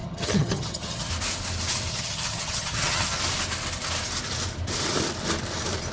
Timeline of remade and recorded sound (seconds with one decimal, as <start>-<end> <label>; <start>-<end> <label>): 0.0-1.1 remade; 1.1-1.9 recorded; 1.9-3.2 remade; 3.2-5.9 recorded

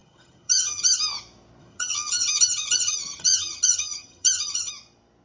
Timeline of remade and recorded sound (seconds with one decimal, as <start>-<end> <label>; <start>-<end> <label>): 0.0-1.0 remade; 1.0-1.6 recorded; 1.6-4.7 remade; 4.7-5.2 recorded

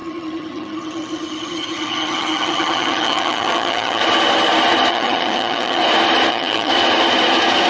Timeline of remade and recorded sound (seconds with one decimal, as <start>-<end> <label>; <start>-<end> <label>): 0.0-4.0 remade; 4.0-4.9 recorded; 4.9-5.8 remade; 5.8-6.3 recorded; 6.3-6.7 remade; 6.7-7.7 recorded

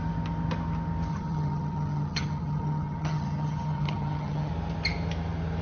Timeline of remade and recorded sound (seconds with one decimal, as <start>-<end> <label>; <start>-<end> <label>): 0.0-1.1 recorded; 1.1-4.5 remade; 4.5-5.6 recorded

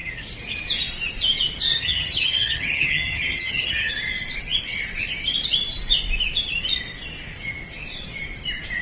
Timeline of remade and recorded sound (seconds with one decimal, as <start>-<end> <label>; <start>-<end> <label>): 0.0-1.7 recorded; 1.7-3.9 remade; 3.9-8.8 recorded

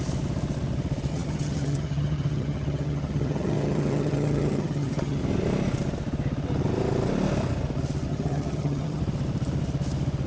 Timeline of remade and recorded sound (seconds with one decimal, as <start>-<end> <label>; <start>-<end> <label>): 0.0-1.1 recorded; 1.1-5.2 remade; 5.2-8.1 recorded; 8.1-9.0 remade; 9.0-10.3 recorded

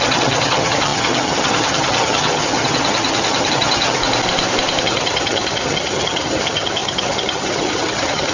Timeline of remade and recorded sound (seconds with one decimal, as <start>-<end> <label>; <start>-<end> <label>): 0.0-4.0 remade; 4.0-4.8 recorded; 4.8-8.3 remade